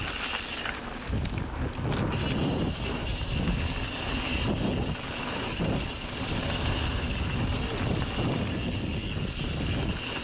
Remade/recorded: recorded